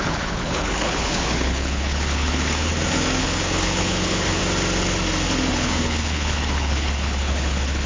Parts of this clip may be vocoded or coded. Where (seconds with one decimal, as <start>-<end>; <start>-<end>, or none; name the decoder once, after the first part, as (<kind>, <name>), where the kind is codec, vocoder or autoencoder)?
0.0-2.7 (codec, HILCodec); 3.2-4.4; 5.5-7.9